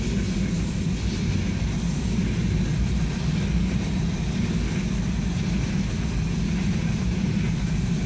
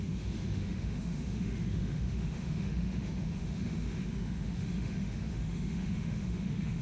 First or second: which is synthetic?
second